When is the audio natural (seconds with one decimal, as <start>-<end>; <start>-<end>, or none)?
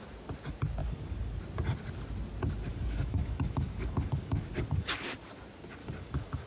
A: 0.0-0.8; 1.4-2.7; 5.0-5.8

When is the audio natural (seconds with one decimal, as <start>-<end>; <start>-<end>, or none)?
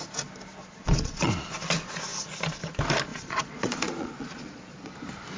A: 0.0-0.6; 1.3-3.1; 4.9-5.4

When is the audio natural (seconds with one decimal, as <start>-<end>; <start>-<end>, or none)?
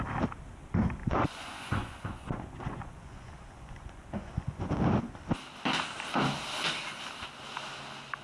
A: 0.0-1.0; 4.7-8.2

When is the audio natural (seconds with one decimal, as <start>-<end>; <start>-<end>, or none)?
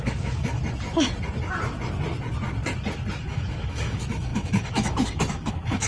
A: 0.6-3.2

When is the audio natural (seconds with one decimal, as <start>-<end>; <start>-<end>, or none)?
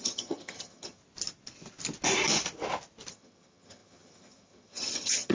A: 1.0-3.1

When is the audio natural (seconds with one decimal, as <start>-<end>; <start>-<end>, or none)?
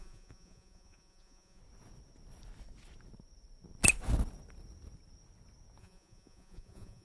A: 1.6-5.8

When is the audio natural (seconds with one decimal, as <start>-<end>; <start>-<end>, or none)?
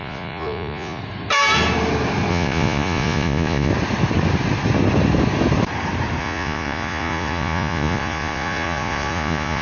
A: 1.0-2.3; 3.7-6.2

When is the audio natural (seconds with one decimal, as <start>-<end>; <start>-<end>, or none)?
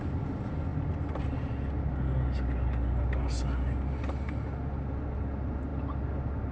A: 0.0-0.7; 1.2-6.5